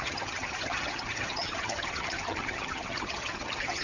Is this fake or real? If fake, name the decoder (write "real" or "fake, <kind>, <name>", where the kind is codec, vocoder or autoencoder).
fake, vocoder, HiFi-GAN